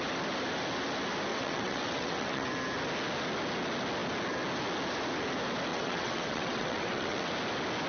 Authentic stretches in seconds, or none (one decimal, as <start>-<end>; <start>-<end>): 0.0-1.3; 2.5-5.7; 7.3-7.9